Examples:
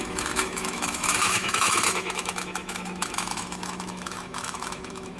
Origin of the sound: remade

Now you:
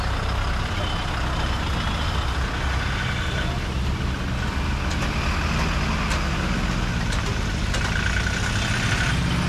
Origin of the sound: recorded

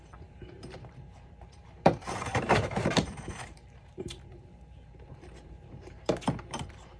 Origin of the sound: remade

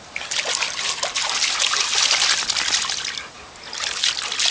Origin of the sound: recorded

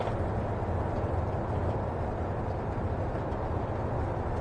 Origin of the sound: recorded